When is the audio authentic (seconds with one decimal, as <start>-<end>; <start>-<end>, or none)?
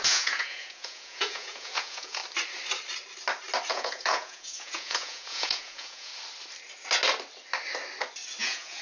2.2-3.7; 6.1-8.4